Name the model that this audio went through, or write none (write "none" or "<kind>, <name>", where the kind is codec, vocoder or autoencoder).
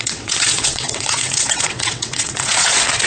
vocoder, WaveNeXt